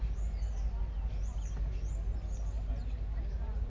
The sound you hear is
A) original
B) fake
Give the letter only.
A